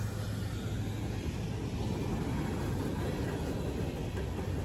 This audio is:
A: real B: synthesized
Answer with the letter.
A